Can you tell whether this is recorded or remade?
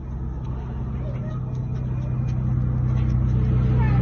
recorded